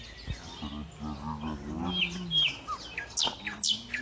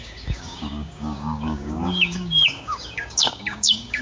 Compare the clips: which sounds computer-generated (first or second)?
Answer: second